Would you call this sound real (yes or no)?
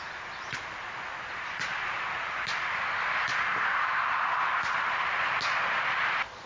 yes